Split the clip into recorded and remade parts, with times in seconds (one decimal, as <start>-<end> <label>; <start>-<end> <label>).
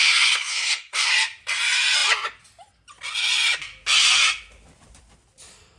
0.0-1.1 remade; 1.1-5.8 recorded